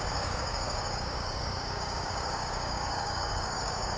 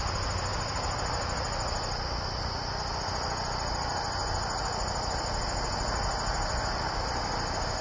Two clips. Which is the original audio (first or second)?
second